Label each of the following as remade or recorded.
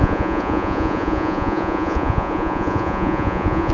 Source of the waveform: remade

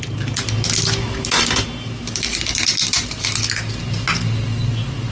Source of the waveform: recorded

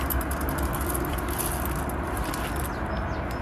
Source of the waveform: recorded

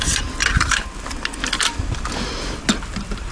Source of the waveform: recorded